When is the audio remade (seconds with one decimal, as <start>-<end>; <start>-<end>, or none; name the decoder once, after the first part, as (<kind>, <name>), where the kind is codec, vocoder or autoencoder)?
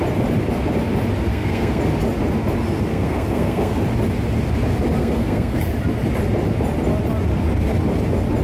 1.3-1.8 (codec, SNAC); 2.9-3.8; 5.0-5.6